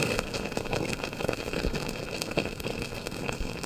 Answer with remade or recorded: remade